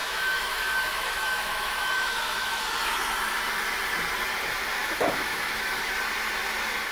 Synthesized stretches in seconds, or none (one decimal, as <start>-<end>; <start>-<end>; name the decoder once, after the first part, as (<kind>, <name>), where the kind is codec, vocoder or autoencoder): 0.0-2.6 (autoencoder, DAC-VAE); 4.8-5.9